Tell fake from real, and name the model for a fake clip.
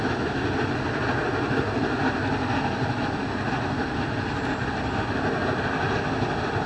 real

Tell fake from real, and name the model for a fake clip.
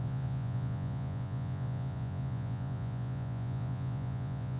fake, vocoder, Vocos